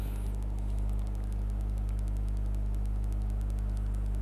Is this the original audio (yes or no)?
yes